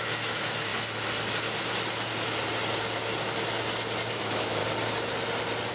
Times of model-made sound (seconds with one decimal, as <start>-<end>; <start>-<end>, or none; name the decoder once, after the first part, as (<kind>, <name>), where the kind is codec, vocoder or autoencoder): 0.0-0.7 (autoencoder, DAC-VAE); 4.1-4.6